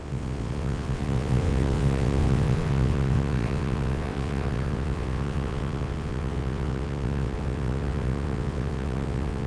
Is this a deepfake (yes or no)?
yes